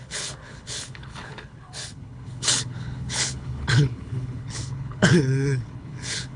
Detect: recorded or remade remade